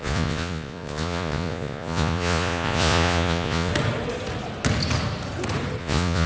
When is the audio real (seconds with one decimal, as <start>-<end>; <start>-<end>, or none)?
3.7-5.8